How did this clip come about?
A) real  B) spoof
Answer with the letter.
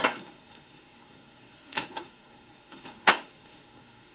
B